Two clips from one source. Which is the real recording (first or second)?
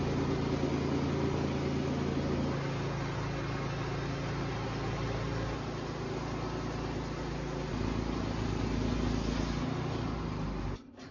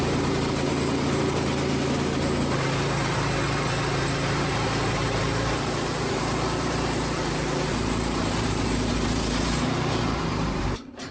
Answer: first